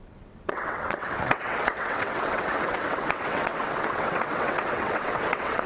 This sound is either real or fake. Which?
fake